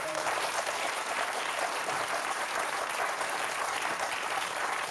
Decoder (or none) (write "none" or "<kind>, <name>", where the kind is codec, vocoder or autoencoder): vocoder, BigVGAN v2